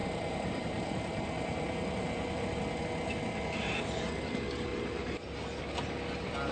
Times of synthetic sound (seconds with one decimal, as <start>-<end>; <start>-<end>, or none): 0.0-2.8; 4.7-5.6